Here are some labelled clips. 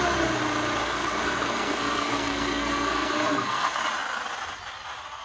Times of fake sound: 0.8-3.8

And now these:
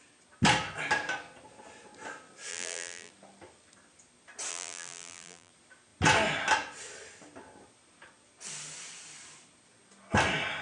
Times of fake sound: 2.5-3.1; 4.5-5.5